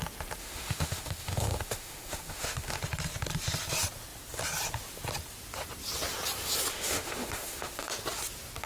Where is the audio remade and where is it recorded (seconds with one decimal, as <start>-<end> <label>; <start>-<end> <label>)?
0.0-0.4 recorded; 0.4-2.8 remade; 2.8-6.7 recorded; 6.7-7.9 remade; 7.9-8.7 recorded